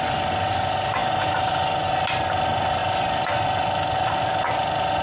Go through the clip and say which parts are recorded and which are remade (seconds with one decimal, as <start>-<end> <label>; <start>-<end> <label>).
0.0-5.0 recorded